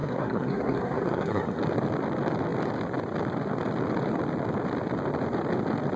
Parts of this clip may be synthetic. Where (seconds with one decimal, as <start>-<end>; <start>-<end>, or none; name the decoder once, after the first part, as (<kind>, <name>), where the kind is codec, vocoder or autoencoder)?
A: 0.0-1.6 (codec, SNAC)